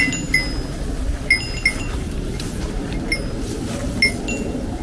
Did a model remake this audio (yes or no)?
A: no